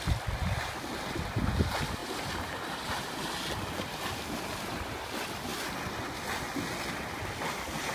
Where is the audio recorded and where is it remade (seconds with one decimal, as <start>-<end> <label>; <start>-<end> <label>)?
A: 0.0-2.0 recorded; 2.0-3.2 remade; 3.2-7.9 recorded